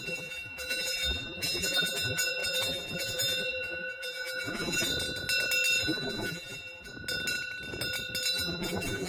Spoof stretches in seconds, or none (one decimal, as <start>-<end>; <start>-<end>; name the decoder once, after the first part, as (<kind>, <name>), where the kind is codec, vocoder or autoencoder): 0.0-4.9 (vocoder, BigVGAN v2); 5.8-6.9; 8.3-9.1